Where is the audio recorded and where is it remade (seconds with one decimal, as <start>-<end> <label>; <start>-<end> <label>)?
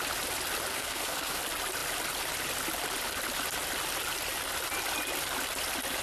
0.0-0.7 recorded; 0.7-1.4 remade; 1.4-6.0 recorded